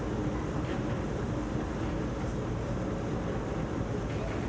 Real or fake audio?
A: real